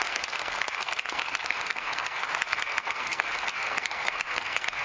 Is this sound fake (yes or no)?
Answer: yes